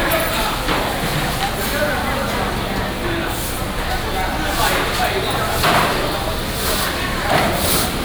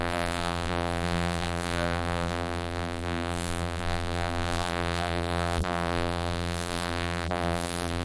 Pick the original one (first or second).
first